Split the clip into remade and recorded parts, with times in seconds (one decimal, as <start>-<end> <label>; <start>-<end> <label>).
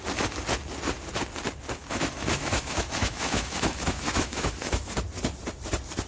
0.0-1.8 recorded; 1.8-5.0 remade; 5.0-6.1 recorded